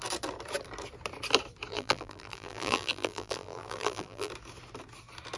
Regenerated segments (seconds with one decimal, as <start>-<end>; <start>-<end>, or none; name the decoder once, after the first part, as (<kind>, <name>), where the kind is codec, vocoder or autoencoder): 1.7-4.3 (vocoder, BigVGAN v2)